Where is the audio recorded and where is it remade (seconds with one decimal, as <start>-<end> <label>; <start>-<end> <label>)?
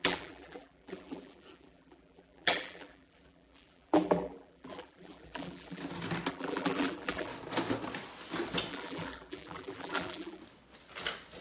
0.0-5.8 remade; 5.8-6.3 recorded; 6.3-7.3 remade; 7.3-8.7 recorded; 8.7-10.4 remade; 10.4-11.4 recorded